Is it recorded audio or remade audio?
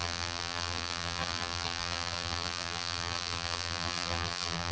remade